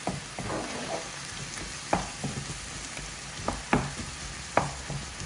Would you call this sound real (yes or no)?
yes